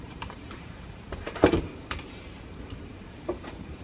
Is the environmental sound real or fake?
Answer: fake